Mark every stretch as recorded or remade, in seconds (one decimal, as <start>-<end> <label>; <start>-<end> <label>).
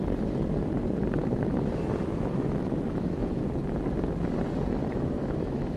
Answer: 0.0-1.2 recorded; 1.2-3.4 remade; 3.4-4.8 recorded; 4.8-5.8 remade